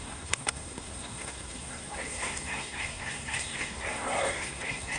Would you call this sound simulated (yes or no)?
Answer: yes